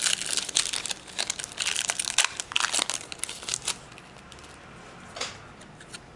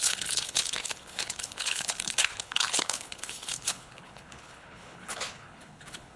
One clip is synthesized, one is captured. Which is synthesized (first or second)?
second